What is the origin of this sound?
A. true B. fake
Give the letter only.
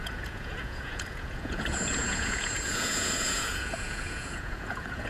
B